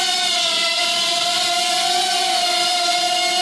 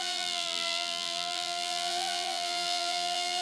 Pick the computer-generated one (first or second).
second